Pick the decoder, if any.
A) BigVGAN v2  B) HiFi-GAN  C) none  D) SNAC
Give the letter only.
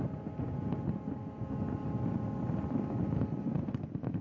C